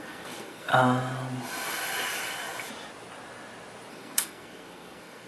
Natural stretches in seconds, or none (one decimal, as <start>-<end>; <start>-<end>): 0.7-3.9

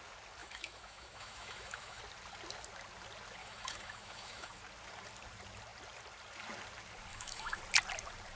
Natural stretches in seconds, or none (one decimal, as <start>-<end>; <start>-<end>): 0.0-0.4; 2.0-3.4; 4.6-7.1; 7.6-8.4

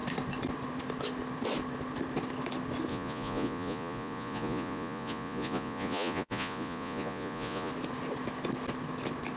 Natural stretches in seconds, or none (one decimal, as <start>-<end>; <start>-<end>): 0.0-2.9; 7.7-9.4

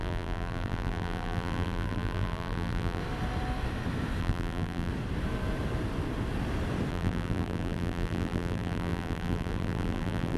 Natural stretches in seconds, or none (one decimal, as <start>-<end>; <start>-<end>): 3.0-4.2; 4.9-6.9

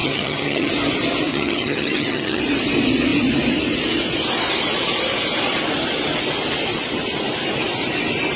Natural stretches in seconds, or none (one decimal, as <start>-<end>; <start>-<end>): 0.7-1.3; 2.4-8.4

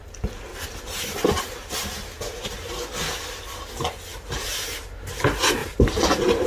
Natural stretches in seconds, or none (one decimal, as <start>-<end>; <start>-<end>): 0.0-0.5; 2.5-4.1; 4.9-5.6

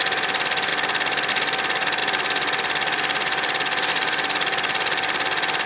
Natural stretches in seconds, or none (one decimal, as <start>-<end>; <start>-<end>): 0.0-5.7

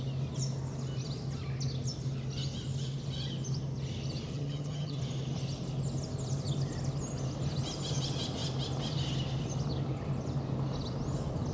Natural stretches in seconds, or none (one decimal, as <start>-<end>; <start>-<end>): 0.0-4.3; 5.0-11.5